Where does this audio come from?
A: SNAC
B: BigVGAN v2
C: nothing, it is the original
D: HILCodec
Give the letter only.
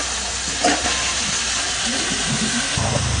C